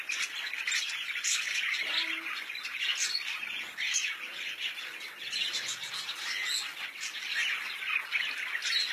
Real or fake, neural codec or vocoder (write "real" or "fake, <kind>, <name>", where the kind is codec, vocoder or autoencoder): real